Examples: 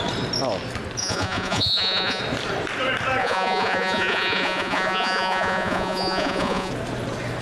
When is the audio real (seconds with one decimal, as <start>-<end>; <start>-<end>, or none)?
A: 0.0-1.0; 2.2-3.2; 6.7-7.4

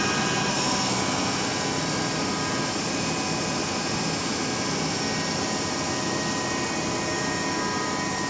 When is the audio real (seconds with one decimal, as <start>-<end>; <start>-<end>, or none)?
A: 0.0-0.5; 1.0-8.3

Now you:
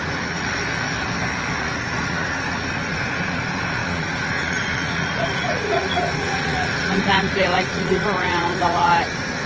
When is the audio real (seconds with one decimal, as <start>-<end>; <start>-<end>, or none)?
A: 0.6-1.6

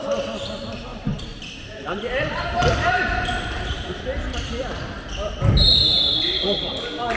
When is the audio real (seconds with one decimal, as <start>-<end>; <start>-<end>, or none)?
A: 0.0-7.2

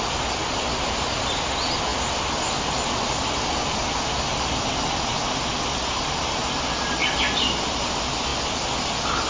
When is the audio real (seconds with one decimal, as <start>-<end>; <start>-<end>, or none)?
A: 0.0-9.3